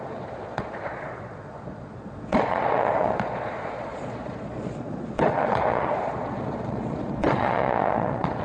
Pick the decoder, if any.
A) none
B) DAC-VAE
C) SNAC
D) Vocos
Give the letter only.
D